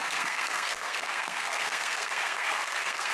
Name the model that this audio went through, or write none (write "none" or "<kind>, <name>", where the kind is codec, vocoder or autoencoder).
codec, SNAC